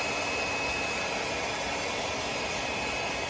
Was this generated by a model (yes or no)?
no